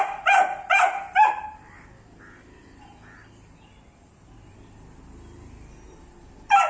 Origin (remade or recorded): recorded